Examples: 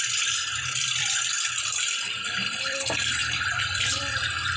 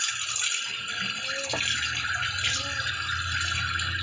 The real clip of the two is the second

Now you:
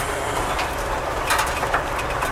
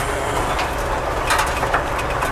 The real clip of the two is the second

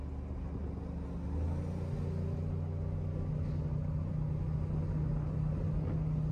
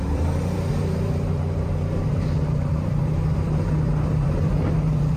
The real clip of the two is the first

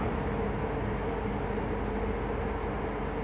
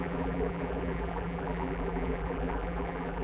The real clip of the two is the first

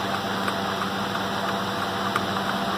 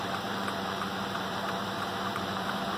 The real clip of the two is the first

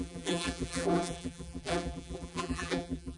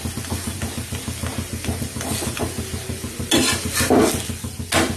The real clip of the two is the second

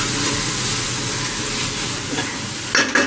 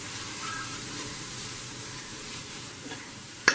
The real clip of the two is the first